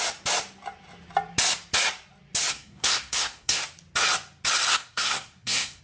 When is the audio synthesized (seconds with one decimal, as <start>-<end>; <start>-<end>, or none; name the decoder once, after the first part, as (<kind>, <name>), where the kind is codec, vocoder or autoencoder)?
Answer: 2.5-3.6 (codec, SNAC); 4.7-5.8